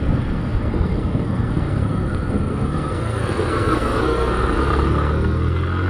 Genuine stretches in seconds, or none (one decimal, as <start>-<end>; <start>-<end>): none